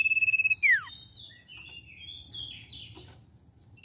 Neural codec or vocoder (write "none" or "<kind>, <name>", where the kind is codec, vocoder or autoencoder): none